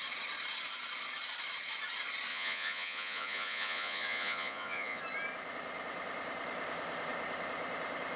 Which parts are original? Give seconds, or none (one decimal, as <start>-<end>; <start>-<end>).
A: 0.0-2.3; 5.0-8.2